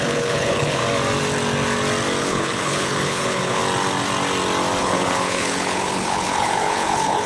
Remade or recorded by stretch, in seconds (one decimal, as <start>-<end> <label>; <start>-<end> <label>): 0.0-0.8 remade; 0.8-2.2 recorded; 2.2-3.6 remade; 3.6-4.8 recorded; 4.8-7.3 remade